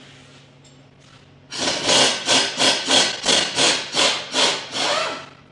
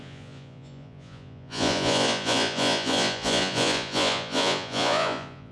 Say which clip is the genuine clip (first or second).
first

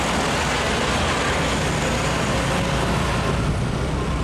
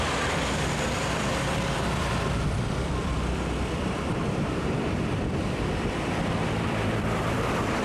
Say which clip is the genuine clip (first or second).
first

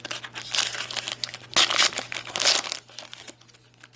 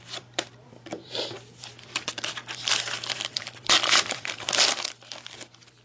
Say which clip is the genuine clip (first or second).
first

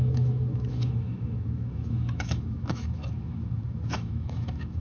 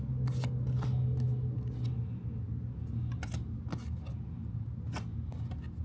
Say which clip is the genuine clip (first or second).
second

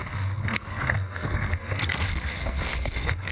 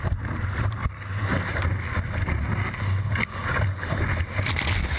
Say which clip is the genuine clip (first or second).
second